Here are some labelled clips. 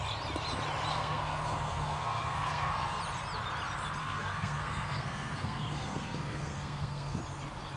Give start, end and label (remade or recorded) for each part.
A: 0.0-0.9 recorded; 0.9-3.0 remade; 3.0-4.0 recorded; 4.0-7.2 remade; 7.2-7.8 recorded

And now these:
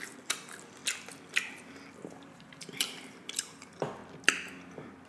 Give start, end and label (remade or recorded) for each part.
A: 0.0-0.8 remade; 0.8-2.0 recorded; 2.0-4.0 remade; 4.0-5.1 recorded

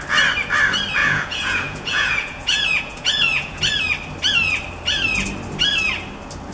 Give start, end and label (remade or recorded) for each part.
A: 0.0-1.0 recorded; 1.0-3.6 remade; 3.6-6.5 recorded

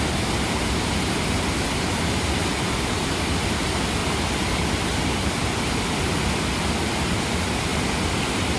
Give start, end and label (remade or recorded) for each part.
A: 0.0-8.6 recorded

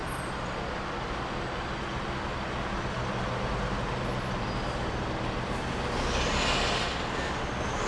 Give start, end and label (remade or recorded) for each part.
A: 0.0-7.9 recorded